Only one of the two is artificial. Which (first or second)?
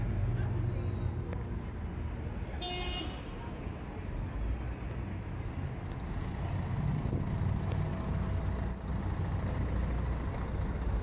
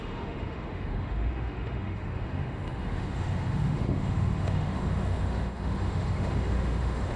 second